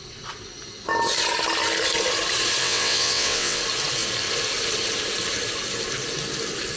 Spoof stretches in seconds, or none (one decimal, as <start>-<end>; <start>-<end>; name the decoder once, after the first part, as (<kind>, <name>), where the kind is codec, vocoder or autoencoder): 2.6-3.6 (vocoder, WaveNeXt)